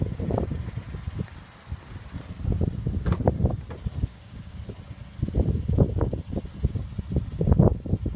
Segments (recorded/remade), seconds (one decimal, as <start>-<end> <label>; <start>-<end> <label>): 0.0-4.1 recorded; 4.1-4.6 remade; 4.6-8.2 recorded